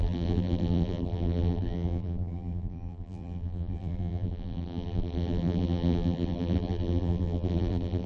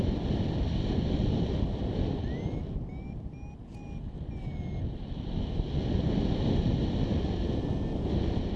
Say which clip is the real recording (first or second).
second